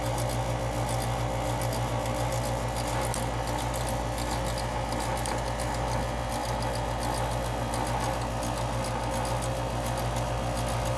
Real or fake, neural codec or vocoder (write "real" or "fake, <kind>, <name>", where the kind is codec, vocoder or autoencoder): real